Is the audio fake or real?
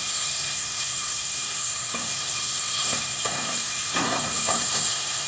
fake